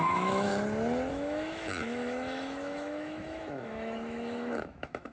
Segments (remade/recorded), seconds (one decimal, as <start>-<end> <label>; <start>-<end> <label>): 0.0-0.5 remade; 0.5-1.1 recorded; 1.1-5.1 remade